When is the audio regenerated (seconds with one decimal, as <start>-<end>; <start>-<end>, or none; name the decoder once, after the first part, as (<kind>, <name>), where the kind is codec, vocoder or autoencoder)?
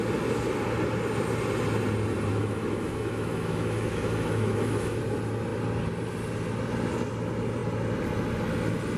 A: 2.3-5.0 (autoencoder, DAC-VAE)